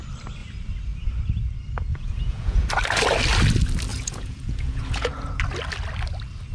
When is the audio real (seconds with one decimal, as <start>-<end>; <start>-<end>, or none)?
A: 0.0-1.9; 2.7-3.9; 5.4-6.5